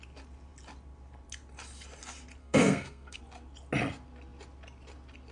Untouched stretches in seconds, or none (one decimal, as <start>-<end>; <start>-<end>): 0.0-2.4; 3.2-5.3